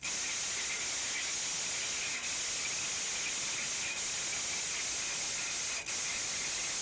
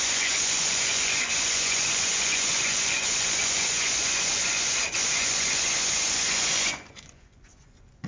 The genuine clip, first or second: first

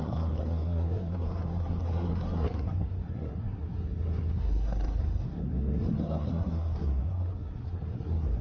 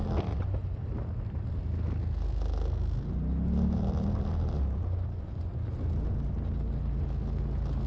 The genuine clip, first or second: second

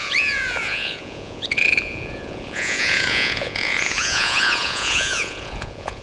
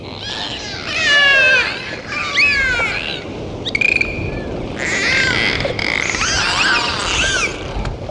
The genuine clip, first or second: second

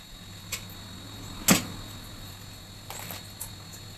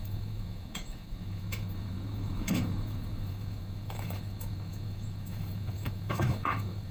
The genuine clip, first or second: first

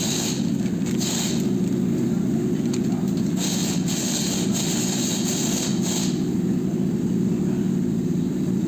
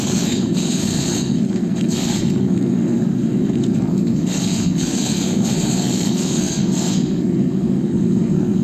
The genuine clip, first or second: first